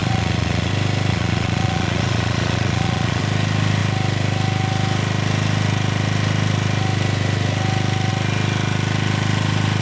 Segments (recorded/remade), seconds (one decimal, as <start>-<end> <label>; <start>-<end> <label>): 0.0-0.7 remade; 0.7-1.1 recorded; 1.1-3.2 remade; 3.2-9.8 recorded